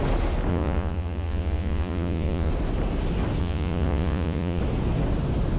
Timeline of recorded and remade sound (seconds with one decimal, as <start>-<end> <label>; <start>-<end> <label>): 0.0-0.5 recorded; 0.5-2.5 remade; 2.5-3.4 recorded; 3.4-4.6 remade; 4.6-5.6 recorded